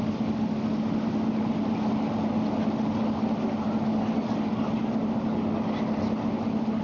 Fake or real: real